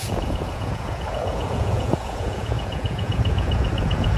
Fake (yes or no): yes